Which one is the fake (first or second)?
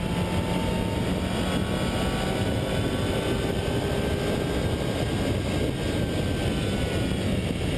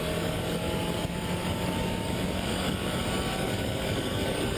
second